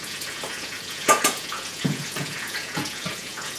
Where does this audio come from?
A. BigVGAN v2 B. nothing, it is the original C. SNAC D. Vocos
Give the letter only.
D